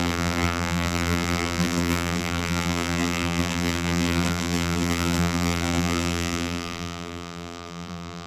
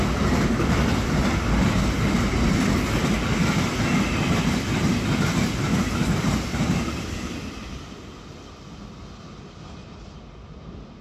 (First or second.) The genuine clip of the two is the second